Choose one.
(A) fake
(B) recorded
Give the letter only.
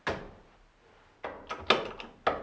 B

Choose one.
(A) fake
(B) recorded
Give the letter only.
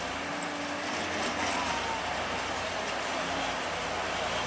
B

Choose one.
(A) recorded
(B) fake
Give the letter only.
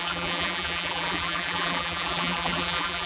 B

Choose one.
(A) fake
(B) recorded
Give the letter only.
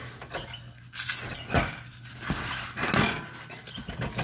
B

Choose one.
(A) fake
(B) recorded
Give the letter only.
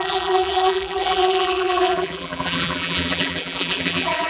A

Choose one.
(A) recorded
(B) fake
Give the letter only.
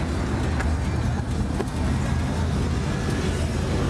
A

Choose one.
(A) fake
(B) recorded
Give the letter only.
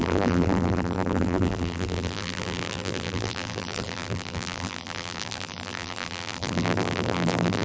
A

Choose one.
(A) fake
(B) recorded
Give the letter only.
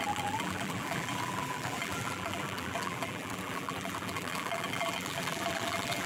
A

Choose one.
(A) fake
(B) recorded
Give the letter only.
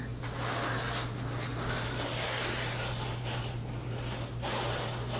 B